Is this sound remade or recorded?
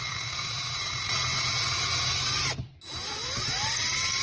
recorded